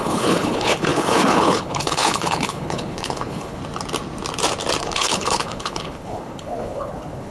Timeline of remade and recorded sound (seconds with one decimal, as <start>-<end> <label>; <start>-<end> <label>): 0.0-3.6 remade; 3.6-4.8 recorded; 4.8-7.3 remade